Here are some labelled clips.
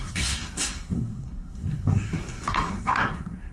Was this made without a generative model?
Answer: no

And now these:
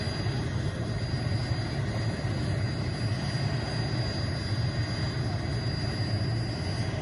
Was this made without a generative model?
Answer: yes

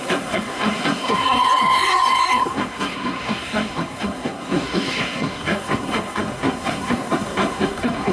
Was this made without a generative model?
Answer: no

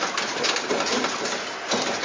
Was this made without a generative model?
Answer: yes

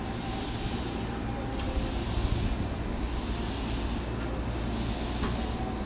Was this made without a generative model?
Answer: yes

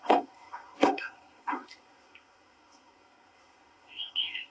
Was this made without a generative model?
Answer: no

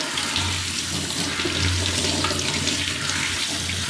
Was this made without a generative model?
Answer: yes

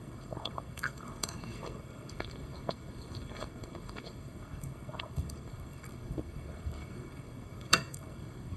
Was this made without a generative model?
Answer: no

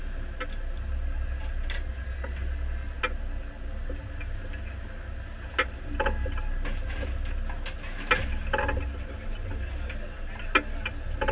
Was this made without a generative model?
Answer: yes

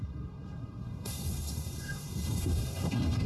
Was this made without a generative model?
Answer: no